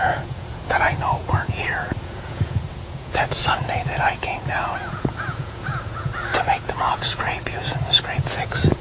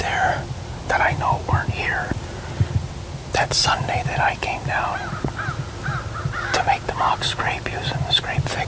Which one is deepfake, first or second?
first